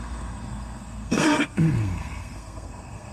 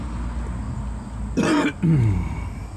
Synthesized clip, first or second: first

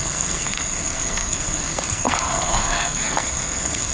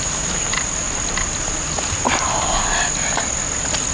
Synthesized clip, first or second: first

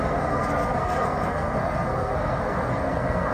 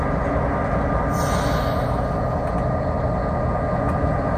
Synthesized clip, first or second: first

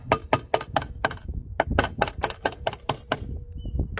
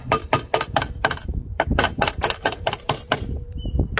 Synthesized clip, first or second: second